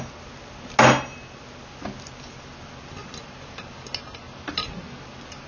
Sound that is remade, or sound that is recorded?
recorded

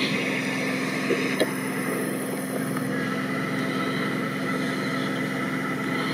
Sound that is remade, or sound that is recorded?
recorded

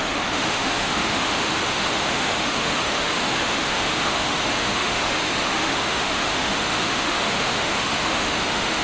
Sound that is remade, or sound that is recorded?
remade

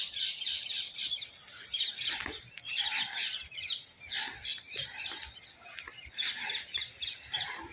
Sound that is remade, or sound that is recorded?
recorded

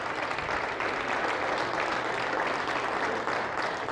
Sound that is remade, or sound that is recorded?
recorded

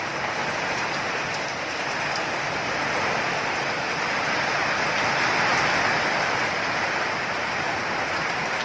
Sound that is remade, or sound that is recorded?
remade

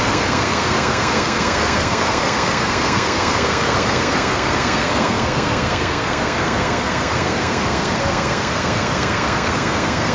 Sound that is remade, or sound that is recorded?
remade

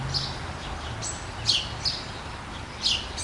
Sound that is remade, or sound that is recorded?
recorded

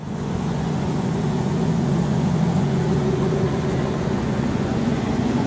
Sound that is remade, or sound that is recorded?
remade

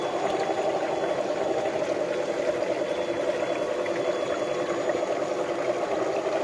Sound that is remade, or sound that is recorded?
recorded